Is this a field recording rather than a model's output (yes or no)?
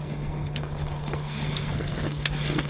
no